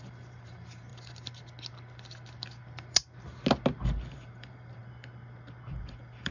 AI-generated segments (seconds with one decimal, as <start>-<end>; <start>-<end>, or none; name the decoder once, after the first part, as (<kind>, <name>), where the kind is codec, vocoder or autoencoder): 0.0-0.9 (vocoder, BigVGAN v2); 4.1-4.8; 5.8-6.3